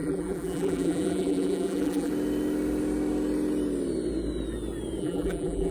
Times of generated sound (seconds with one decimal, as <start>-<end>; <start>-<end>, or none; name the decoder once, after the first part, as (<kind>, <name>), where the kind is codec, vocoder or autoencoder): 0.0-2.1 (vocoder, BigVGAN v2); 5.0-5.7